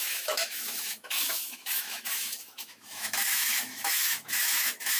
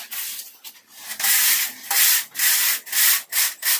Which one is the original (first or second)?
second